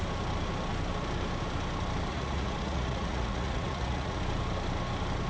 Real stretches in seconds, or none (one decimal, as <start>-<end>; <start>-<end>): 0.0-2.1; 4.2-5.3